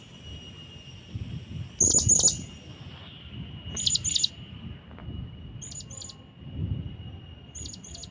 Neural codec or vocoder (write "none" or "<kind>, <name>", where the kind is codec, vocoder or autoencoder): none